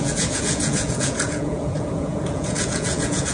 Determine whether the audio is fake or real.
fake